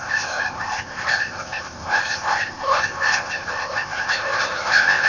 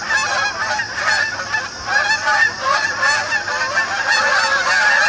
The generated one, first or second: first